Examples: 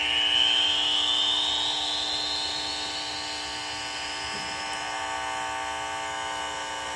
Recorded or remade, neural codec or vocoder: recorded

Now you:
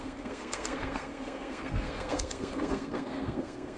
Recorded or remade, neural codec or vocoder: remade, codec, SNAC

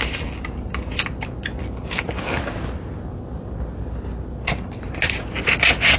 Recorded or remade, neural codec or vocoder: recorded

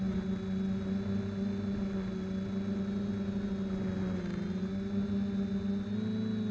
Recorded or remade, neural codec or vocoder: recorded